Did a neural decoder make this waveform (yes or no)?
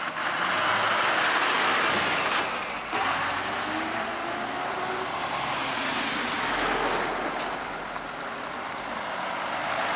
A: no